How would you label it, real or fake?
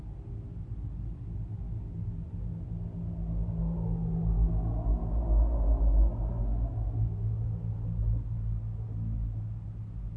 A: real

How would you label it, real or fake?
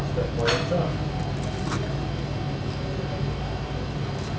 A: real